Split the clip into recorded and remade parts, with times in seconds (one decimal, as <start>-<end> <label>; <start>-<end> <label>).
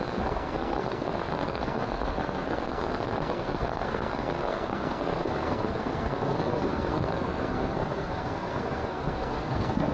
0.0-9.9 remade